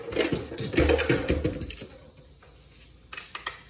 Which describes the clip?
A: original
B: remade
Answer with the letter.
A